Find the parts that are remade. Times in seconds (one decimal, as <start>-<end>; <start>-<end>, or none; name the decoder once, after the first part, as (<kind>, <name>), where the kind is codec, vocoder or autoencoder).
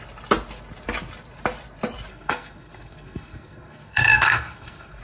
2.1-5.0 (codec, SNAC)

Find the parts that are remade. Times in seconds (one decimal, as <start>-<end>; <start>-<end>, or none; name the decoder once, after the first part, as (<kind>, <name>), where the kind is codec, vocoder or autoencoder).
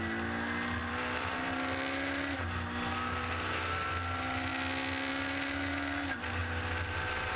0.8-1.5 (vocoder, BigVGAN v2); 6.4-7.4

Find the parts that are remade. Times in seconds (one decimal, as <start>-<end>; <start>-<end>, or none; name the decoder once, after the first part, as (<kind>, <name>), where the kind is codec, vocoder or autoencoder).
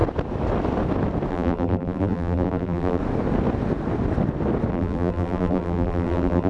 1.3-3.0 (vocoder, BigVGAN v2); 4.7-6.5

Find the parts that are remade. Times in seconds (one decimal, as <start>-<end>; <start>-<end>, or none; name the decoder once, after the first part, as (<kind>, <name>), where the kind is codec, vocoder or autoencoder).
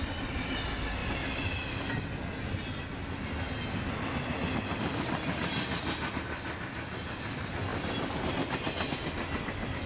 none